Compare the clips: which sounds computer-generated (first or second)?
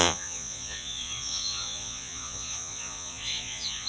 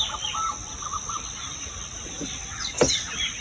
first